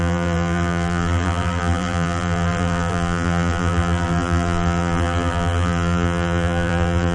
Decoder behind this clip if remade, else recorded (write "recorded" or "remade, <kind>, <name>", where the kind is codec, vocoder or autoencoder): remade, vocoder, BigVGAN v2